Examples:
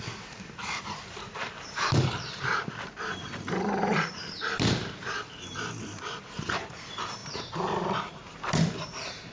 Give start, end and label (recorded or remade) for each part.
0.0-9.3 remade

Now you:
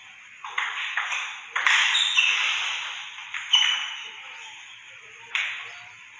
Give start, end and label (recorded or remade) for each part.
0.0-0.7 recorded; 0.7-6.2 remade

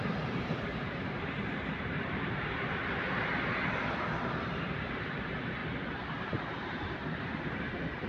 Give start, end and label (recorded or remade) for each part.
0.0-5.6 remade; 5.6-6.1 recorded; 6.1-8.1 remade

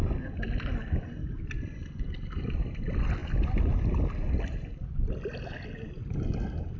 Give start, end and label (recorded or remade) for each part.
0.0-6.8 recorded

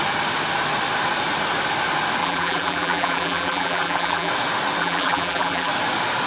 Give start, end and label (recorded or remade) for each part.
0.0-2.2 recorded; 2.2-4.3 remade; 4.3-4.8 recorded; 4.8-5.7 remade; 5.7-6.3 recorded

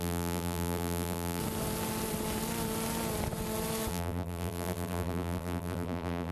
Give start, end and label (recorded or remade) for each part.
0.0-1.4 remade; 1.4-3.9 recorded; 3.9-6.3 remade

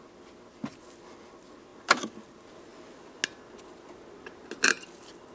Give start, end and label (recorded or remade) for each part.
0.0-5.3 recorded